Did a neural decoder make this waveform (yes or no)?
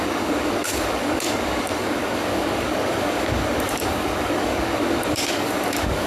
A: yes